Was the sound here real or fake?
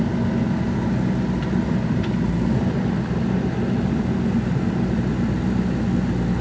real